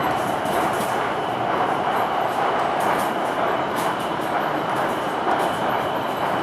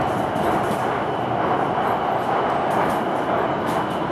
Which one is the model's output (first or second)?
first